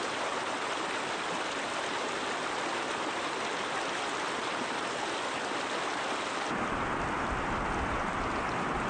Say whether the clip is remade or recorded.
recorded